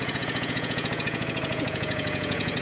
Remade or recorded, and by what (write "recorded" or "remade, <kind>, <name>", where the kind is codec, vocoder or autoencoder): remade, vocoder, Vocos